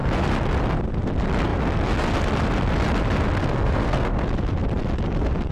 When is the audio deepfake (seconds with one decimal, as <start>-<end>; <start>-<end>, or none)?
3.4-4.1